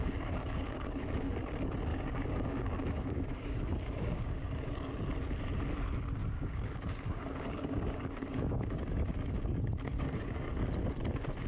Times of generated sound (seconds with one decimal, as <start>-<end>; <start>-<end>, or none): 0.0-1.5; 1.9-4.9; 6.2-10.5